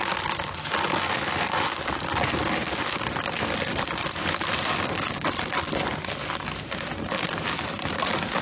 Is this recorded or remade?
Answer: recorded